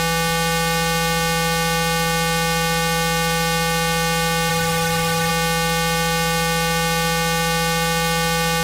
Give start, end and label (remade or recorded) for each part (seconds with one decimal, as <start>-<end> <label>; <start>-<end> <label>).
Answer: 0.0-4.5 recorded; 4.5-5.3 remade; 5.3-8.6 recorded